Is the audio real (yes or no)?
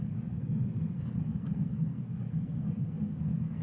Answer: no